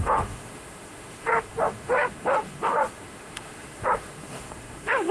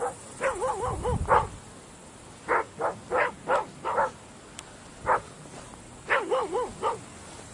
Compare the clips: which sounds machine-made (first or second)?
first